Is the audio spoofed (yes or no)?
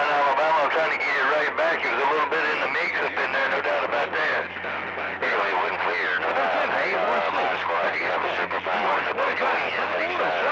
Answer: no